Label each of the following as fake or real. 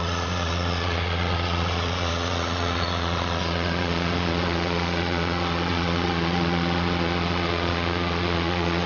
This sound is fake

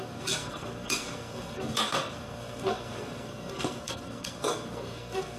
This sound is fake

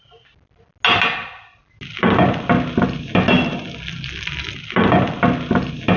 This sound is real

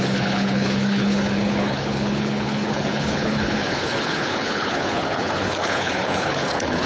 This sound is fake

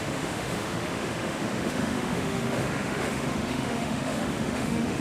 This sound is fake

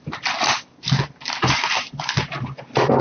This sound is real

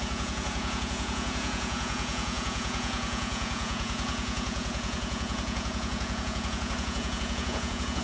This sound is fake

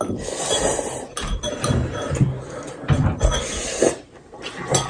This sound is fake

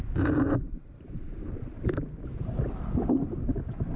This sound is real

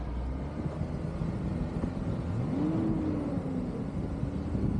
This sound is real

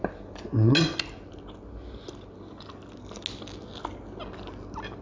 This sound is real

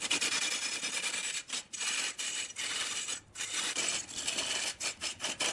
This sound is real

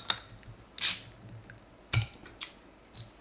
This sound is real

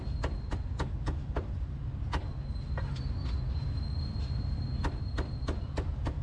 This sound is real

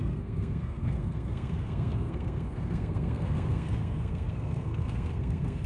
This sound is fake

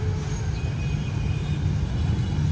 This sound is real